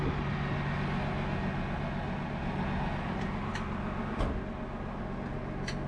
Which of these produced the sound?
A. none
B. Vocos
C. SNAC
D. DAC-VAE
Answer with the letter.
A